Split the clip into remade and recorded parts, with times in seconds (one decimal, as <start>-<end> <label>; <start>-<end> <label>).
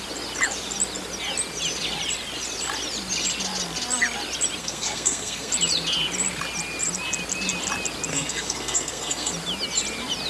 0.0-4.6 recorded; 4.6-5.5 remade; 5.5-8.1 recorded; 8.1-9.3 remade; 9.3-10.3 recorded